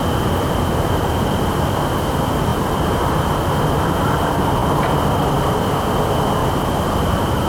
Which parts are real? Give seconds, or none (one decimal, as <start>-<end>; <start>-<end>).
0.0-6.4; 7.0-7.5